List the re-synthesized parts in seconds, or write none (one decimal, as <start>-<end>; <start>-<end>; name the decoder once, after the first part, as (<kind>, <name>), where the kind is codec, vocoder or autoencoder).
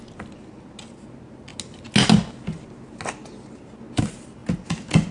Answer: none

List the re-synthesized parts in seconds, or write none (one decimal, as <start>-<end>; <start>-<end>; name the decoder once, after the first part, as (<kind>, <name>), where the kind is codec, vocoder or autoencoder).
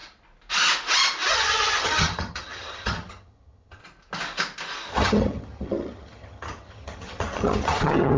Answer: 1.3-3.8 (vocoder, HiFi-GAN); 4.9-8.2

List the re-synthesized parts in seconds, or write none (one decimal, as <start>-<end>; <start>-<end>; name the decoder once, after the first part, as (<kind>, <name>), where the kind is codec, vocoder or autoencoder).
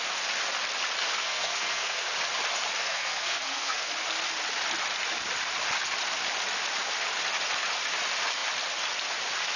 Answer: 1.0-2.1 (codec, SNAC); 2.8-3.9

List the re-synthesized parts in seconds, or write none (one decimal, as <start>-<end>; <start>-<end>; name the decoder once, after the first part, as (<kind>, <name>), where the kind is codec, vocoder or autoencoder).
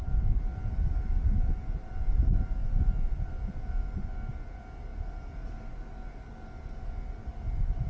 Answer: none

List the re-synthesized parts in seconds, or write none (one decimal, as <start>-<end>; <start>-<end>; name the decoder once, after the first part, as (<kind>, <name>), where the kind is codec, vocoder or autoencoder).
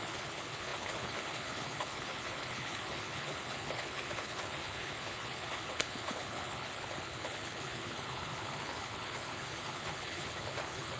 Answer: 0.0-11.0 (codec, HILCodec)